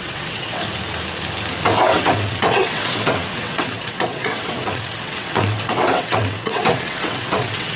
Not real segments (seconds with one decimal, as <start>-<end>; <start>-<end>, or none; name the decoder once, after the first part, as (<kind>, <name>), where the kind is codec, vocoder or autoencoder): 0.0-0.6 (vocoder, WaveNeXt); 1.8-7.8